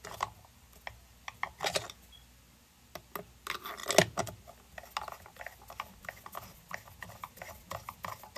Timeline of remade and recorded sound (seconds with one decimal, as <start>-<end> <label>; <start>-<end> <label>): 0.0-8.4 recorded

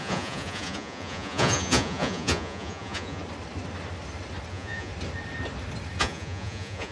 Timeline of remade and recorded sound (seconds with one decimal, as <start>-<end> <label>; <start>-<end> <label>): 0.0-3.2 remade; 3.2-4.5 recorded; 4.5-4.9 remade; 4.9-6.0 recorded; 6.0-6.9 remade

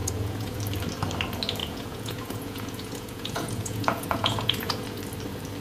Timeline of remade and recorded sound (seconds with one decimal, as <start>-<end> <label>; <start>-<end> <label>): 0.0-0.6 remade; 0.6-1.6 recorded; 1.6-5.0 remade; 5.0-5.6 recorded

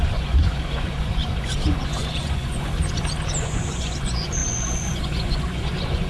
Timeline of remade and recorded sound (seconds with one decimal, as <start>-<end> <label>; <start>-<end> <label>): 0.0-2.7 remade; 2.7-3.4 recorded; 3.4-6.1 remade

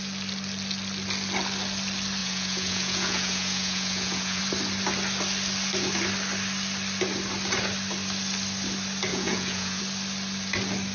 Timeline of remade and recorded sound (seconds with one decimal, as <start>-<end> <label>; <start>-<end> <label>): 0.0-2.2 recorded; 2.2-4.4 remade; 4.4-9.1 recorded; 9.1-9.8 remade; 9.8-10.9 recorded

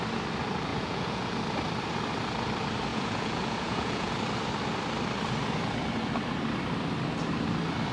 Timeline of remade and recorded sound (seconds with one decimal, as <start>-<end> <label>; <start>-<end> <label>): 0.0-0.7 recorded; 0.7-1.3 remade; 1.3-2.9 recorded; 2.9-4.1 remade; 4.1-7.9 recorded